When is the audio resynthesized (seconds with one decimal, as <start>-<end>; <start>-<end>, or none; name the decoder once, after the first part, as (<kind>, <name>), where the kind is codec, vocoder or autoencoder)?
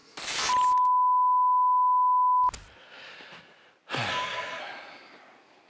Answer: 4.1-4.6 (codec, SNAC)